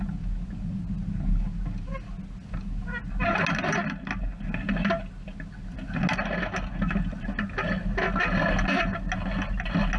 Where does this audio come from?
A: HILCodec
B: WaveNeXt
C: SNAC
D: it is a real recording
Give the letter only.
D